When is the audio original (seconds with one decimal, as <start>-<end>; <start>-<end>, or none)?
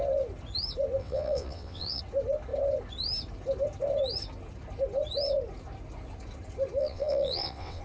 0.0-1.0; 2.0-6.8